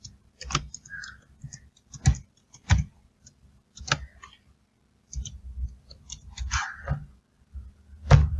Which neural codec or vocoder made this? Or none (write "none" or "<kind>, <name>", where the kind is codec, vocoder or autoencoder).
none